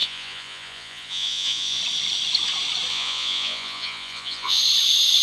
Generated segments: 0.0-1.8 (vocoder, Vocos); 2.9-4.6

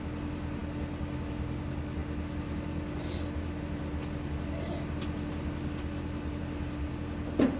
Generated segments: none